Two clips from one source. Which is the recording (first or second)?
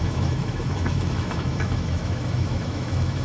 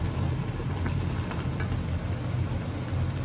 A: second